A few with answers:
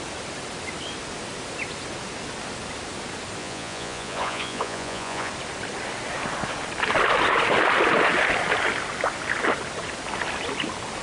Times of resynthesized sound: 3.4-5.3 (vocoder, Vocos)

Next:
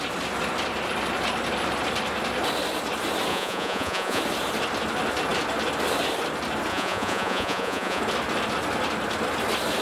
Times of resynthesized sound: 3.3-4.2 (vocoder, Vocos); 6.7-8.0

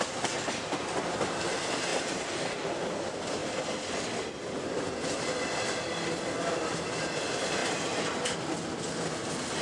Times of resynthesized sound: none

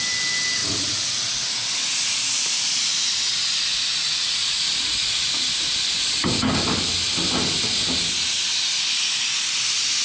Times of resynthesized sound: 0.6-1.3 (vocoder, Vocos); 3.7-5.3